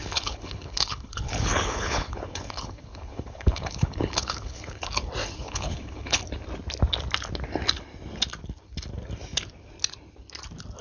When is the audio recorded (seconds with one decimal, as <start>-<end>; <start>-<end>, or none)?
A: 4.8-5.2; 6.2-10.8

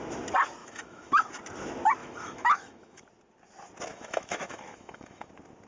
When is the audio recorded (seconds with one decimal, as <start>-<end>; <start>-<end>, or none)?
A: 0.0-0.6; 1.3-2.0; 3.0-3.9; 5.3-5.7

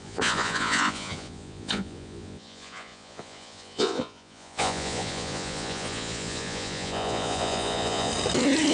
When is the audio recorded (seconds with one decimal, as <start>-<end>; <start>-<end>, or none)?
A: 8.1-8.7

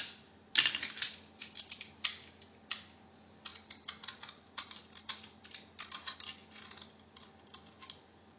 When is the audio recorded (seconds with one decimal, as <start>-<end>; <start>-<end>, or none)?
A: 0.0-8.4

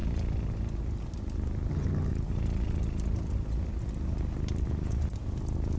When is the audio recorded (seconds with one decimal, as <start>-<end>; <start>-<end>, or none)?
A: 0.0-1.7; 2.1-5.8

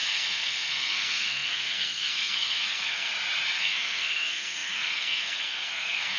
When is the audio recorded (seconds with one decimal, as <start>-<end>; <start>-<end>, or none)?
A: 3.1-3.6

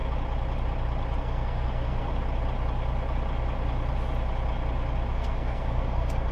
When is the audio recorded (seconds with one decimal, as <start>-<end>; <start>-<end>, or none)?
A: 0.0-1.2; 2.1-5.1

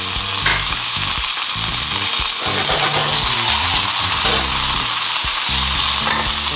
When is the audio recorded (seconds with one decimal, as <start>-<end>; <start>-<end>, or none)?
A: 0.0-0.5; 1.1-6.6